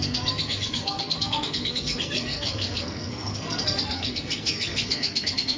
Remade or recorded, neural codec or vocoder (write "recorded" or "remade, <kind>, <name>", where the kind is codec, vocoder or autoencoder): remade, codec, SNAC